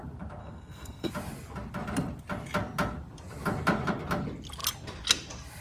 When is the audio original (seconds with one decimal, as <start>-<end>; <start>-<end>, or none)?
0.0-0.4; 1.1-5.6